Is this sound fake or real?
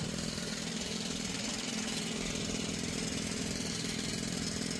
fake